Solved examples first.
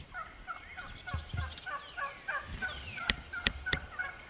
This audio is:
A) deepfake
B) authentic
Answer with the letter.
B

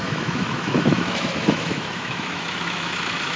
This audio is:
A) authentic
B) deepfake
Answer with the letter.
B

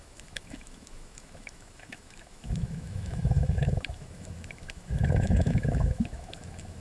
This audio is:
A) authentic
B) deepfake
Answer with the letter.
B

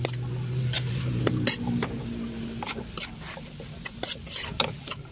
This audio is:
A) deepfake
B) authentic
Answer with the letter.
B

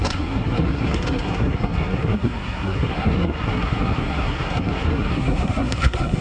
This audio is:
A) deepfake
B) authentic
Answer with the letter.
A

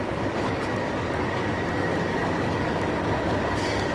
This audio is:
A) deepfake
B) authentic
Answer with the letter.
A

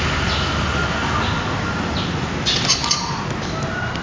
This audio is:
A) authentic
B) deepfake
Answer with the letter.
A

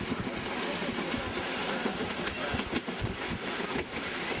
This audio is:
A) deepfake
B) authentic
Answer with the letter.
B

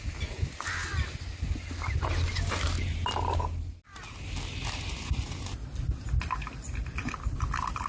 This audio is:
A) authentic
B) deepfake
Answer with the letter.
A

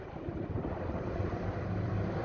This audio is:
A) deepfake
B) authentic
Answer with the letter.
A